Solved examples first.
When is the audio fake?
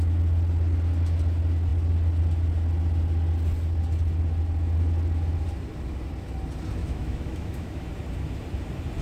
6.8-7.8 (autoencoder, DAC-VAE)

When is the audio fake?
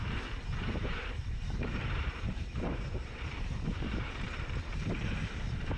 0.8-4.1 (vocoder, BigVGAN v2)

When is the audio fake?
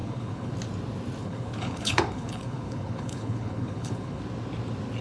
0.0-0.5 (codec, HILCodec); 1.2-4.2